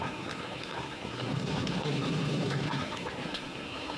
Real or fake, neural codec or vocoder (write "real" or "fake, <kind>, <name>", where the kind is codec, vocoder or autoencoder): fake, codec, SNAC